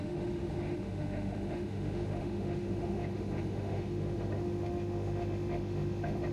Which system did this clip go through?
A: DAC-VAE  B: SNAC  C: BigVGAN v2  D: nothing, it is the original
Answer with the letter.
A